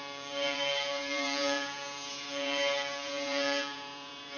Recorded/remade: remade